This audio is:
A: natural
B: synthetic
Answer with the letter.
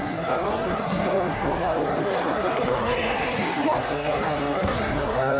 B